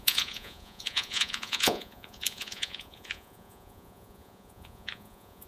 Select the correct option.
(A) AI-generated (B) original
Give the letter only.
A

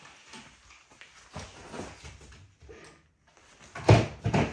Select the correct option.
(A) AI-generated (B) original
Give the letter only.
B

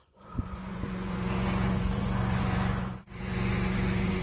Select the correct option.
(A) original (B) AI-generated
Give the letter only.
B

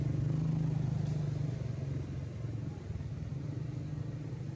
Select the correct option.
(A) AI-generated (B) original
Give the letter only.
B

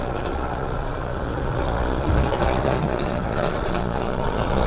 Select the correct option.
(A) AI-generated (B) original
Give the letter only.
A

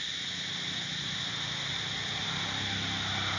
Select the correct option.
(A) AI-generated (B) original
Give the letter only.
B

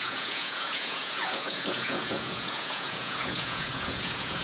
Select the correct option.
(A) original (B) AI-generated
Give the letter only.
B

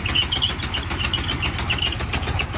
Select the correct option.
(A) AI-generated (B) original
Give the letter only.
B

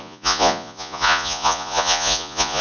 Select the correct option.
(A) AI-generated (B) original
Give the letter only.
A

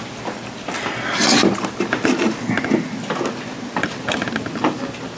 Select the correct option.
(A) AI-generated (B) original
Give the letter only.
B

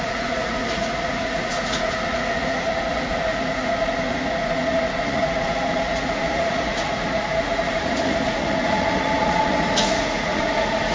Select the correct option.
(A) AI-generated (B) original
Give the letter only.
A